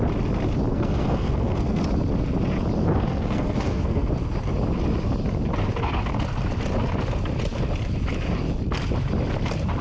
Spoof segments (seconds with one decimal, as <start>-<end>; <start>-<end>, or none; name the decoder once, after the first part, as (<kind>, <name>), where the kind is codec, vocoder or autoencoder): 0.7-1.8 (codec, SNAC); 2.8-4.1